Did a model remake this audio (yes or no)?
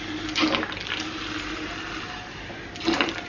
no